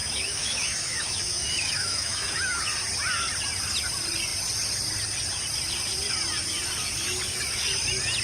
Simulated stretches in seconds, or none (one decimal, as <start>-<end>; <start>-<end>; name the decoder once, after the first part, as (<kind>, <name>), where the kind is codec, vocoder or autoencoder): 0.0-2.6 (autoencoder, DAC-VAE)